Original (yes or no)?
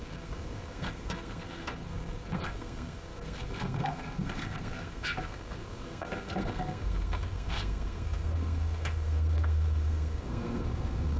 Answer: no